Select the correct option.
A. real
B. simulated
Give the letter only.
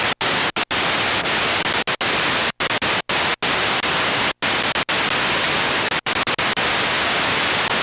A